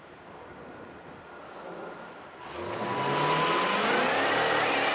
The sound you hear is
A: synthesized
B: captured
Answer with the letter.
B